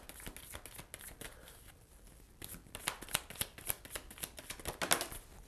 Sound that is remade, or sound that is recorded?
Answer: recorded